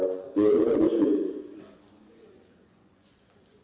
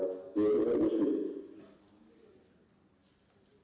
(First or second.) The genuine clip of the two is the second